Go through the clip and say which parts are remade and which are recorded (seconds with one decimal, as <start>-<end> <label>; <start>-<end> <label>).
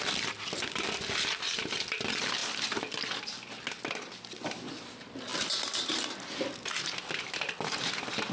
0.0-8.3 recorded